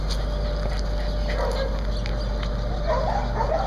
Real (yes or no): yes